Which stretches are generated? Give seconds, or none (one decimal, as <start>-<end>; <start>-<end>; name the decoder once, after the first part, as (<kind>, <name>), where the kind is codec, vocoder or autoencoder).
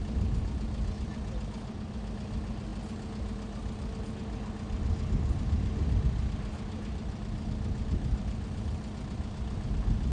none